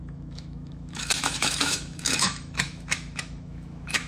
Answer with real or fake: fake